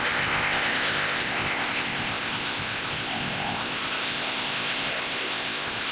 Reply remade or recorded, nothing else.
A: remade